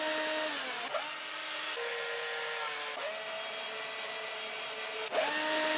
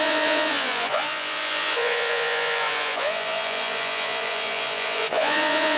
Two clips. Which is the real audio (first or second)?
first